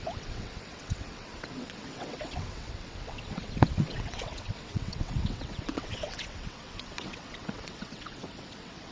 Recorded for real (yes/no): no